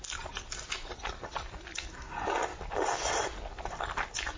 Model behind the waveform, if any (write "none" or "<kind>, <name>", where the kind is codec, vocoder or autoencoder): none